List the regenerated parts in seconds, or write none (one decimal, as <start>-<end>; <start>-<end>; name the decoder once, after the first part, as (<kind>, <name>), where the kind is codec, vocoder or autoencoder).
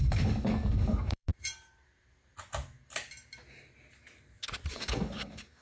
0.0-1.3 (codec, DAC); 4.7-5.6